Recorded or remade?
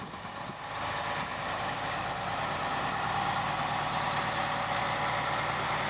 recorded